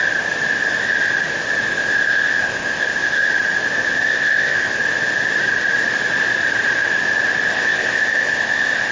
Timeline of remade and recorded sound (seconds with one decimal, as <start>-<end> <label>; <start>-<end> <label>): 0.0-1.7 recorded; 1.7-3.3 remade; 3.3-4.0 recorded; 4.0-4.8 remade; 4.8-7.5 recorded; 7.5-8.9 remade